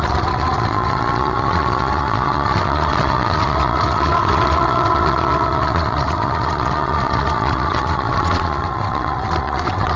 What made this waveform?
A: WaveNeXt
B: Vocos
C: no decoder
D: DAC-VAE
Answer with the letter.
A